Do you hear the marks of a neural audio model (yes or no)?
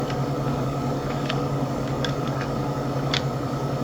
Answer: yes